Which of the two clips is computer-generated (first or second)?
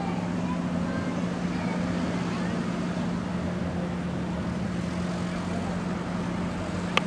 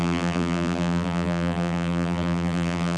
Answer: second